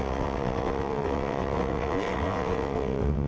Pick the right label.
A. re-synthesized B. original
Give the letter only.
A